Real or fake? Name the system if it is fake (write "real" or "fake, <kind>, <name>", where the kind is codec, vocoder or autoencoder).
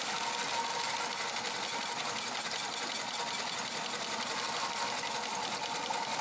real